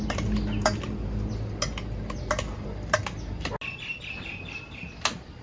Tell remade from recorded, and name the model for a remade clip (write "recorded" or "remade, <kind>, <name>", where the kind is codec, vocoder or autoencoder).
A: recorded